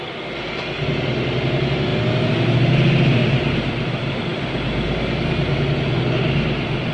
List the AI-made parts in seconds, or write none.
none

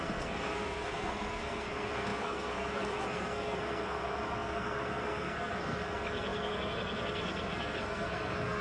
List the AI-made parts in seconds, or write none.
0.0-8.6 (codec, SNAC)

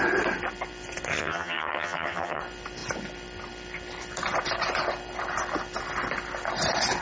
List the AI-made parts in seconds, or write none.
1.1-2.4 (vocoder, HiFi-GAN)

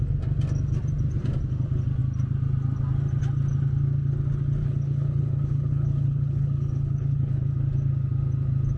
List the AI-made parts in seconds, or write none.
4.6-7.4 (codec, HILCodec)